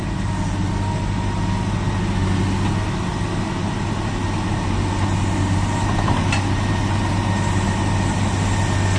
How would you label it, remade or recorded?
recorded